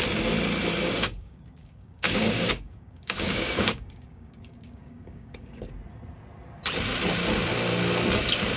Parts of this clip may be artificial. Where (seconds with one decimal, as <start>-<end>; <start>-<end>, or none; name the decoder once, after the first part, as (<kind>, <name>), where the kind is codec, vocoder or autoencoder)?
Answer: 0.8-5.7 (codec, DAC)